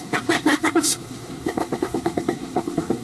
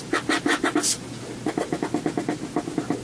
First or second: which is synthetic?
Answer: first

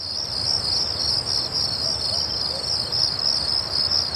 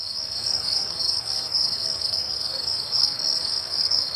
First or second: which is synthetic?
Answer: second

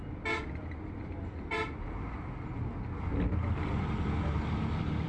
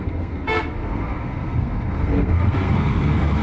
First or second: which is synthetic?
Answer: second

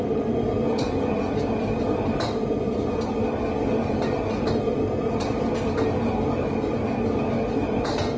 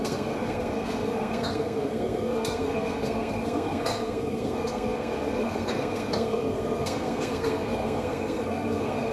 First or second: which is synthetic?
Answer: second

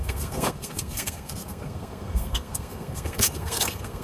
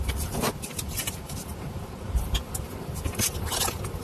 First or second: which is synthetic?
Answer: first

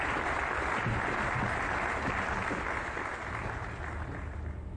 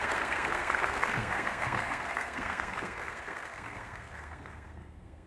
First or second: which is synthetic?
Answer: second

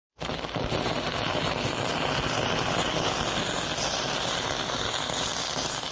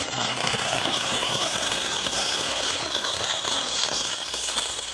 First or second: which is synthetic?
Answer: second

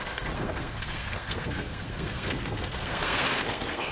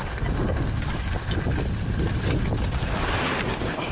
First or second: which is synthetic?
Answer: first